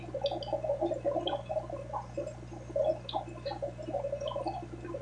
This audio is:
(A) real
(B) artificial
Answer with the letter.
A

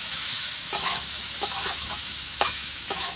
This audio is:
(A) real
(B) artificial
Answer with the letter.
B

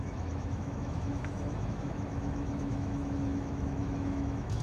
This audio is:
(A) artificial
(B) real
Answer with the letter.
A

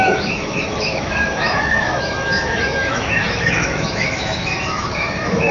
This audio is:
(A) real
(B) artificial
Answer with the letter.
B